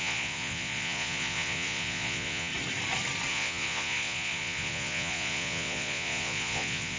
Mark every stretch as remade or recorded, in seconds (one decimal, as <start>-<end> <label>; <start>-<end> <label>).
0.0-2.5 remade; 2.5-3.3 recorded; 3.3-7.0 remade